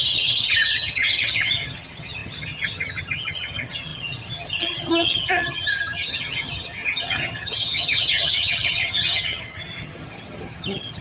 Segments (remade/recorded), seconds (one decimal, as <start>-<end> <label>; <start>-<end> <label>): 0.0-11.0 remade